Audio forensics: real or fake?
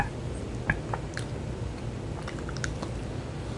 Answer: real